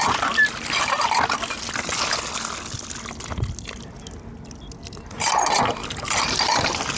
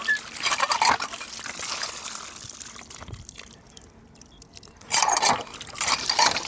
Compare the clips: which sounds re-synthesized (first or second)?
second